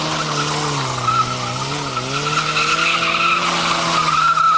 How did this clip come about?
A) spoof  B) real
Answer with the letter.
B